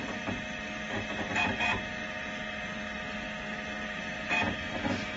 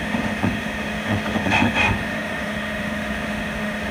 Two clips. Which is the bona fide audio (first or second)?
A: first